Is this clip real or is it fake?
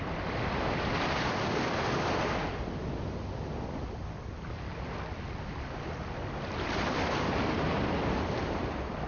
real